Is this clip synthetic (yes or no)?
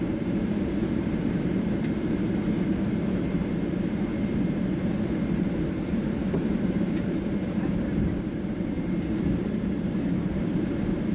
yes